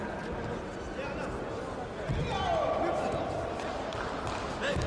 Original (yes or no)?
yes